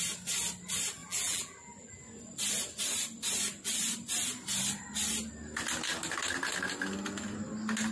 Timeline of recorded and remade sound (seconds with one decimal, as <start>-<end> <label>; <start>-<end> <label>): 0.0-1.0 recorded; 1.0-1.9 remade; 1.9-7.9 recorded